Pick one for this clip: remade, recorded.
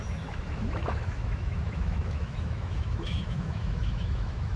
remade